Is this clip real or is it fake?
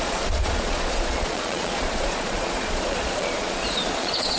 fake